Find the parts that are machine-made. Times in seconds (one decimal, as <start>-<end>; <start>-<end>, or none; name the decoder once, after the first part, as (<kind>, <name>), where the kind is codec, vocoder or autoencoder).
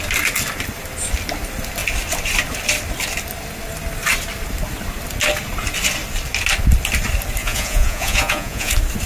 7.4-8.7 (vocoder, Vocos)